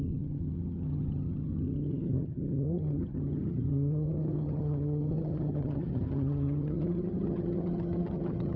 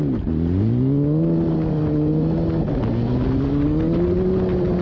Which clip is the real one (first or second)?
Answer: second